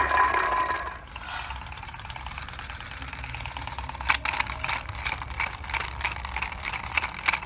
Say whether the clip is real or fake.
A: real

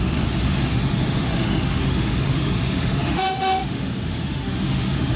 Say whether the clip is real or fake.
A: fake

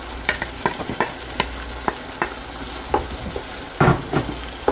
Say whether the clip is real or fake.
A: real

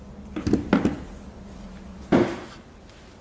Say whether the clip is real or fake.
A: real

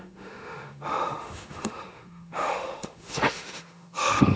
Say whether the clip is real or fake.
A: fake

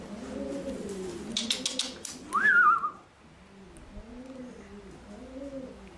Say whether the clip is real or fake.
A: real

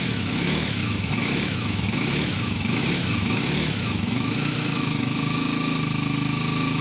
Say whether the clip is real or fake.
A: fake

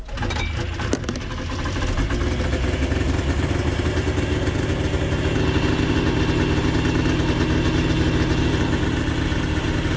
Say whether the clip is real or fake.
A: real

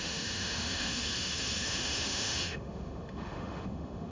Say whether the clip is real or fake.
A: fake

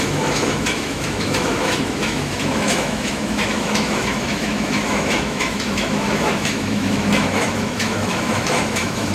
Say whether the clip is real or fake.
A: fake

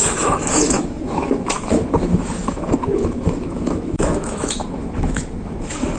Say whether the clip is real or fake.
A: fake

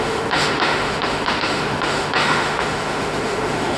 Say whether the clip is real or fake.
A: fake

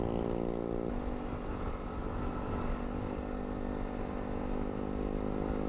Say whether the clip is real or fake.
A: real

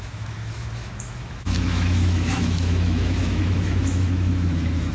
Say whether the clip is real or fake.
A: fake